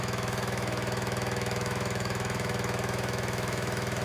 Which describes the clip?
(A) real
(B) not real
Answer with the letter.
B